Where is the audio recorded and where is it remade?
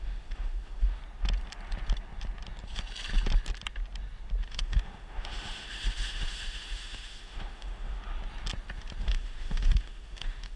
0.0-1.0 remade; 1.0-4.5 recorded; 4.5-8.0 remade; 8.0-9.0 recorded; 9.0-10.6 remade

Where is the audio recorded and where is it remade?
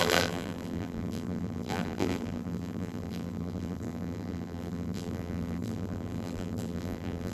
0.0-7.3 remade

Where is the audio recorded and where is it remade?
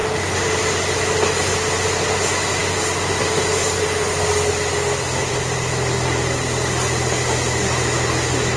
0.0-8.6 recorded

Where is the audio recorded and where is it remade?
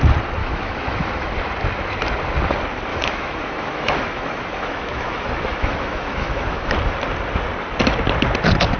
0.0-0.4 recorded; 0.4-1.3 remade; 1.3-2.9 recorded; 2.9-6.7 remade; 6.7-8.8 recorded